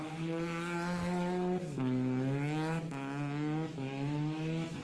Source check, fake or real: fake